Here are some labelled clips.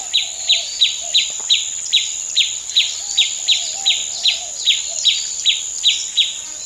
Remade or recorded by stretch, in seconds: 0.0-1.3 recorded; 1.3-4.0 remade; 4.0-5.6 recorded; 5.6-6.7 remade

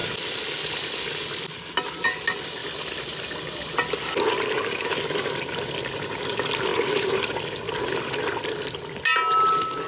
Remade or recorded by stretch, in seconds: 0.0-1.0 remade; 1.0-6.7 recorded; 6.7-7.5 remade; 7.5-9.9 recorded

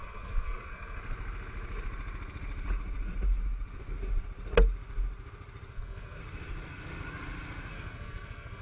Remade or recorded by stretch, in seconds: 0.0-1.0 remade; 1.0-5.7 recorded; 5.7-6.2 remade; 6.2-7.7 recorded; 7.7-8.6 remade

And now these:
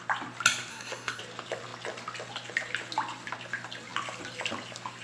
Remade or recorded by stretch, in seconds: 0.0-0.7 recorded; 0.7-1.2 remade; 1.2-5.0 recorded